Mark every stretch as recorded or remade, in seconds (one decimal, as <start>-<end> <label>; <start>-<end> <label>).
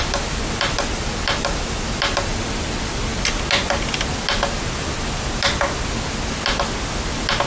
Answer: 0.0-7.5 recorded